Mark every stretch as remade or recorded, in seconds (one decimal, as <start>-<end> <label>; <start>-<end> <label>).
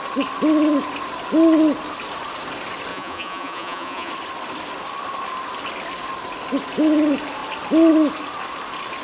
0.0-2.9 recorded; 2.9-4.1 remade; 4.1-9.0 recorded